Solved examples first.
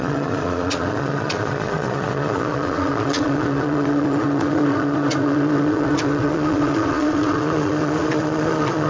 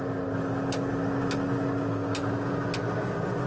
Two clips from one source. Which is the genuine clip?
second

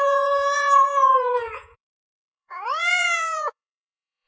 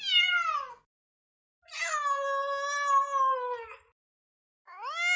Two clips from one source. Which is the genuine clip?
second